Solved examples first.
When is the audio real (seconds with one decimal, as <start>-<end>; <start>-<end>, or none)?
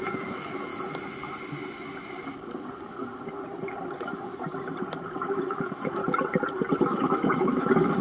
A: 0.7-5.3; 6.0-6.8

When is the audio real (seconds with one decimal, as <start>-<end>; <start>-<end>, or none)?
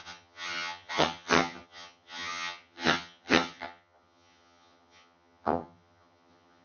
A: none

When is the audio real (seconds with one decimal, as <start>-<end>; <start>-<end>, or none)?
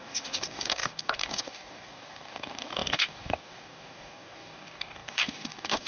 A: none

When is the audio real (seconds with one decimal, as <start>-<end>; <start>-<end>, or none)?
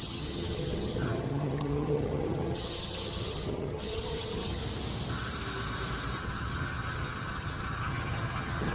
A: 4.6-6.2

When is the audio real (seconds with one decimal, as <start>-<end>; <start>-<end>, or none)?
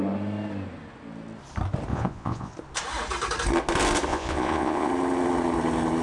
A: 0.0-1.9; 2.5-4.1; 4.9-6.0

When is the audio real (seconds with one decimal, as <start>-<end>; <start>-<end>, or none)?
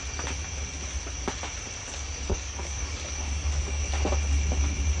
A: 0.0-1.8; 3.9-5.0